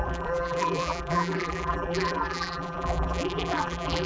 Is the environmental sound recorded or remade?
remade